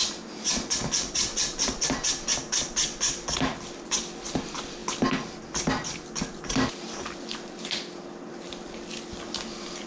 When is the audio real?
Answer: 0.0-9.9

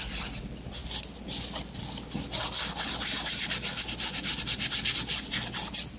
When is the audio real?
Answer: 0.0-6.0

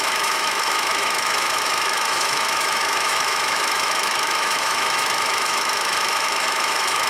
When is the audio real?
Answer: none